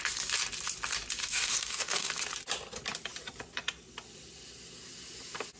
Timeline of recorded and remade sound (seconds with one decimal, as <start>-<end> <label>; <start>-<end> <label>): 0.0-1.2 recorded; 1.2-2.1 remade; 2.1-5.6 recorded